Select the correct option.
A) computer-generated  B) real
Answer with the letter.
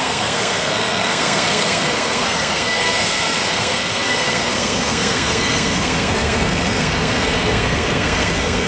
A